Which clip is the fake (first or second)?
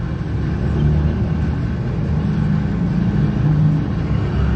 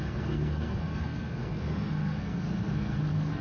second